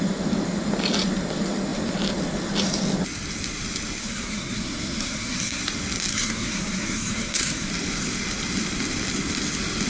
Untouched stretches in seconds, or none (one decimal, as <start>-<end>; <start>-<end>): 0.0-4.0; 5.6-6.1; 7.7-9.9